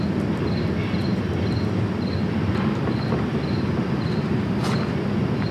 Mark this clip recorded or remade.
recorded